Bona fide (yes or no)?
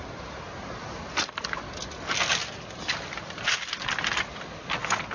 yes